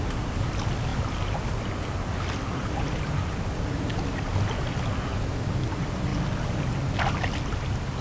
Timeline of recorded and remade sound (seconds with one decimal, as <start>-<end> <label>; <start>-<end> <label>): 0.0-8.0 recorded